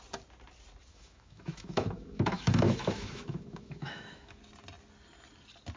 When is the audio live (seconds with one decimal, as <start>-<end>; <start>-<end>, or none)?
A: 0.0-0.9; 4.4-5.8